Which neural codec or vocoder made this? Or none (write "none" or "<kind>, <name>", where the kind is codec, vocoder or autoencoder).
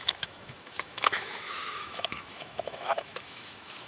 autoencoder, DAC-VAE